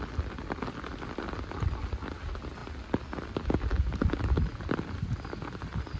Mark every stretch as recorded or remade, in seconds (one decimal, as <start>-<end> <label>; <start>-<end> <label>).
0.0-6.0 recorded